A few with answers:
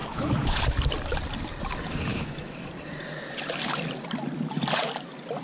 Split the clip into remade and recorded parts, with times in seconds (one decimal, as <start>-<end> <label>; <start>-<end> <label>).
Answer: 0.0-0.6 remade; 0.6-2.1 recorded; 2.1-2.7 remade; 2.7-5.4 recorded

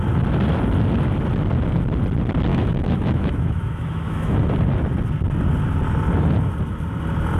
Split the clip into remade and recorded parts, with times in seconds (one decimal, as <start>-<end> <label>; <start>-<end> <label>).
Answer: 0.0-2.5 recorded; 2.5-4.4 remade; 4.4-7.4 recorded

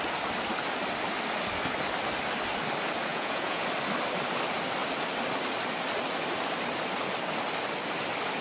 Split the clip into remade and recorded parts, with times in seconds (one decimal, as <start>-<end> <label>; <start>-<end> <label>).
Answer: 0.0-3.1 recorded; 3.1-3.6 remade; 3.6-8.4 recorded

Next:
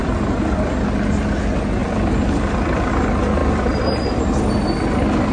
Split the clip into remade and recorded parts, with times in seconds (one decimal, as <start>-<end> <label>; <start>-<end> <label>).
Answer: 0.0-1.8 recorded; 1.8-2.9 remade; 2.9-3.4 recorded; 3.4-4.2 remade; 4.2-5.3 recorded

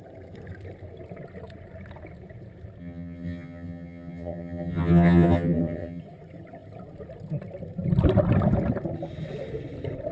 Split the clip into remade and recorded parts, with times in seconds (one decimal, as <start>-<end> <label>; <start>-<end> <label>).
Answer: 0.0-2.8 recorded; 2.8-6.0 remade; 6.0-10.1 recorded

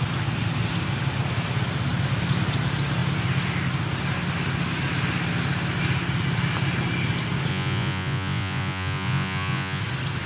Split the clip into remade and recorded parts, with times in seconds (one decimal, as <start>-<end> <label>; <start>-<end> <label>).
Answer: 0.0-7.5 recorded; 7.5-9.8 remade; 9.8-10.3 recorded